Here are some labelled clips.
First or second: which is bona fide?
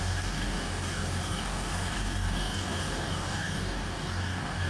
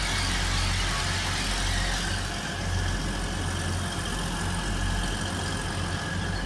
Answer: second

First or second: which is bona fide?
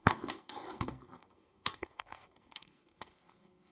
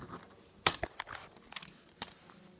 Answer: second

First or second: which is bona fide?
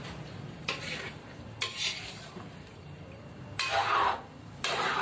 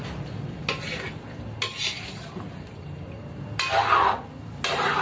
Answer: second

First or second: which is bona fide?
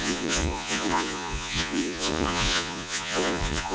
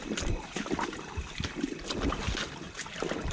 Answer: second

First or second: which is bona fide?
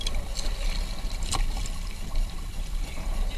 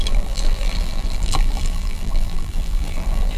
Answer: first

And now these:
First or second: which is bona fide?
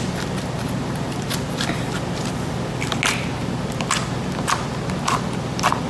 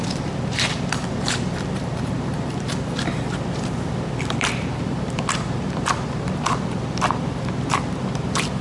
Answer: first